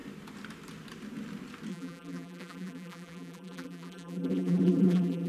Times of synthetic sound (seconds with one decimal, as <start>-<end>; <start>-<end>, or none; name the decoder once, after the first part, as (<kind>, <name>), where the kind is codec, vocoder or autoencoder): 1.7-5.3 (vocoder, BigVGAN v2)